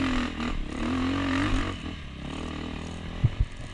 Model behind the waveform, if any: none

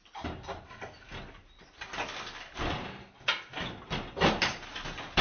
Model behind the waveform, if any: none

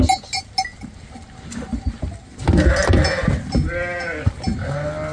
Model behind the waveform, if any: none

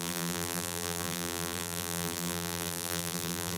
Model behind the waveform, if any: vocoder, BigVGAN v2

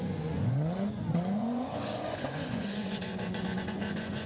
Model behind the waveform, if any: vocoder, Vocos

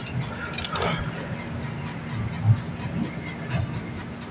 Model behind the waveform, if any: none